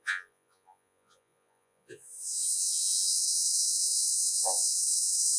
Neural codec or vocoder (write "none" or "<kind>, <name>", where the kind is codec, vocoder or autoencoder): vocoder, Vocos